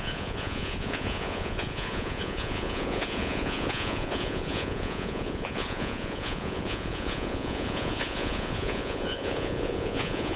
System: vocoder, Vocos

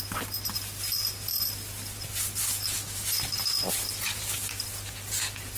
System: none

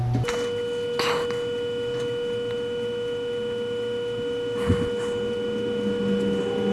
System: none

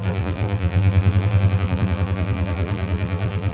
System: vocoder, BigVGAN v2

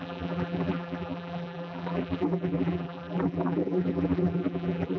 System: vocoder, BigVGAN v2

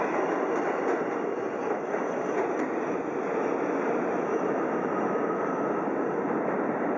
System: none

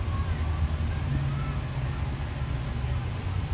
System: none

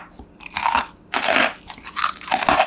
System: none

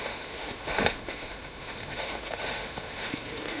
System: autoencoder, DAC-VAE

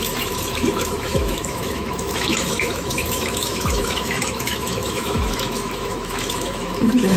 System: autoencoder, DAC-VAE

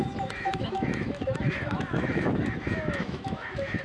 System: autoencoder, DAC-VAE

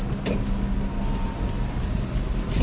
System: none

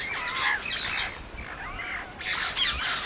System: vocoder, BigVGAN v2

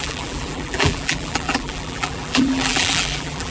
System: vocoder, BigVGAN v2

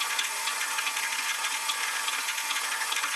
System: vocoder, Vocos